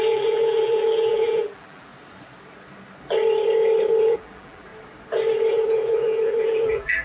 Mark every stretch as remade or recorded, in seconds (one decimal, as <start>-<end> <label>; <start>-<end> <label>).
0.0-1.9 remade; 1.9-4.0 recorded; 4.0-4.7 remade; 4.7-5.5 recorded; 5.5-7.0 remade